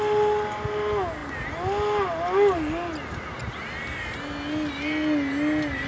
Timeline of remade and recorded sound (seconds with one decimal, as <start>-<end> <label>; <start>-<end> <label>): 0.0-5.9 recorded